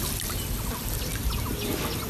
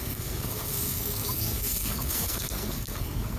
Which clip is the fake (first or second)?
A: second